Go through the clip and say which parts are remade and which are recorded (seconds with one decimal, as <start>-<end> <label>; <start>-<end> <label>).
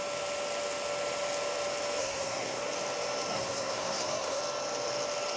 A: 0.0-2.0 recorded; 2.0-2.6 remade; 2.6-3.3 recorded; 3.3-4.4 remade; 4.4-5.4 recorded